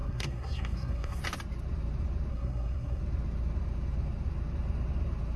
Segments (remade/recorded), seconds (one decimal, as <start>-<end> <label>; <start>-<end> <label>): 0.0-1.2 remade; 1.2-2.3 recorded; 2.3-3.0 remade; 3.0-5.4 recorded